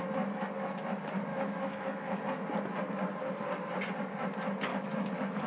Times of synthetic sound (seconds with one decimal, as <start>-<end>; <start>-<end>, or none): 1.3-2.2; 4.7-5.5